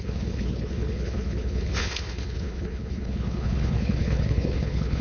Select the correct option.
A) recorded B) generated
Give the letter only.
B